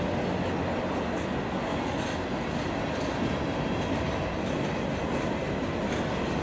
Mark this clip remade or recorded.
recorded